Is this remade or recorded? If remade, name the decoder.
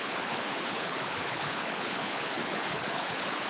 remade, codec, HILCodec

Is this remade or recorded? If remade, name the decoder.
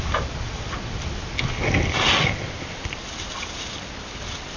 recorded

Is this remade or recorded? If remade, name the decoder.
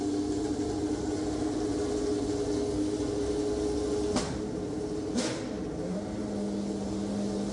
recorded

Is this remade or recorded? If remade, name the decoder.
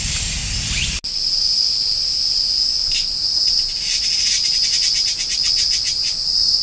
recorded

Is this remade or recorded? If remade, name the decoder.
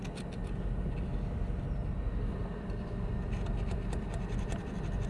recorded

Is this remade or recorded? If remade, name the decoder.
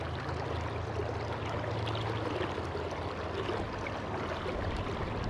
recorded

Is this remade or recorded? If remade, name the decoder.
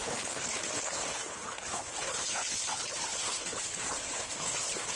remade, codec, HILCodec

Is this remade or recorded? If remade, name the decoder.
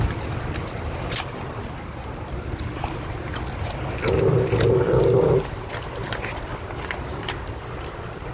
recorded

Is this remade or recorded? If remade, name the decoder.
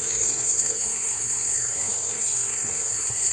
remade, codec, SNAC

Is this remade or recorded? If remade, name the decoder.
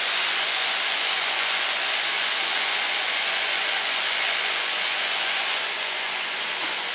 remade, vocoder, Vocos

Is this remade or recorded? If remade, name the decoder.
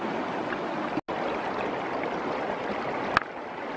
recorded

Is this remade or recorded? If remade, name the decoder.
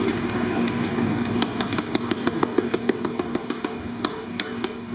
remade, codec, DAC